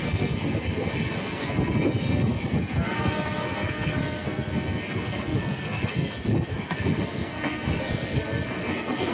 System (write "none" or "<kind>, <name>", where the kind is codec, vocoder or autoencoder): codec, SNAC